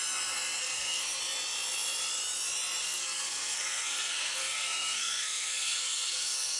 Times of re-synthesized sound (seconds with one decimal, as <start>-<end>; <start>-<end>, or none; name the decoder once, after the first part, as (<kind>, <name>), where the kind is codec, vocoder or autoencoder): 0.6-1.2 (codec, SNAC); 2.8-6.6